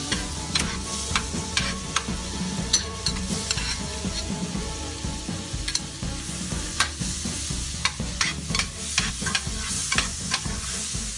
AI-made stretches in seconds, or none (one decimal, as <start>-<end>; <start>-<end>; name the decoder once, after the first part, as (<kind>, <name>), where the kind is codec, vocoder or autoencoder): 0.0-8.3 (vocoder, Vocos); 9.1-11.2